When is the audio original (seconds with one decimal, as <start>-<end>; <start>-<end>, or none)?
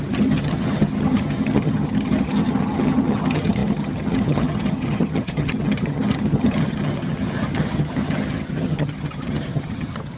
none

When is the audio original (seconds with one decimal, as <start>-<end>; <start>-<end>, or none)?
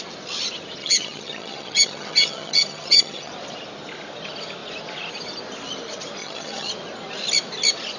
0.0-0.8; 3.3-6.2; 6.7-8.0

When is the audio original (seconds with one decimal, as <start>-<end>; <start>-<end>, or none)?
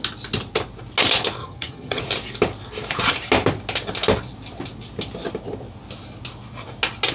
0.0-1.4; 2.0-7.1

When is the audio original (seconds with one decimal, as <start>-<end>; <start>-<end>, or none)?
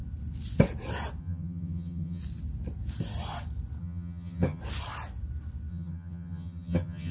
0.0-1.2; 2.2-3.8; 4.6-5.7